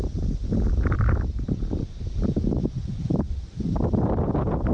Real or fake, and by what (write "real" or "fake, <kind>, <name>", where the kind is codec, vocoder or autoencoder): real